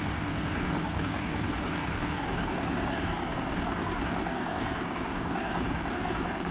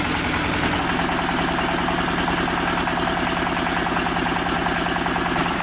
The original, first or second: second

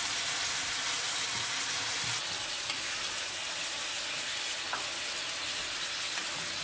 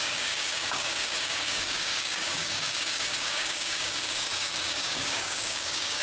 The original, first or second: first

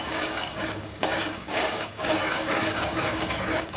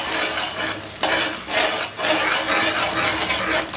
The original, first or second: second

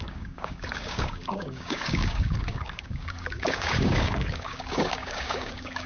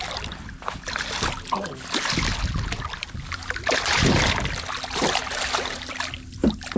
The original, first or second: second